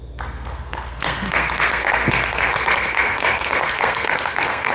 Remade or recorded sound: remade